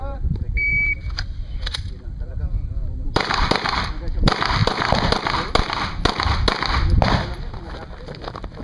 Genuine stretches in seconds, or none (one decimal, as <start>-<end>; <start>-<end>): 3.9-4.6; 5.5-8.6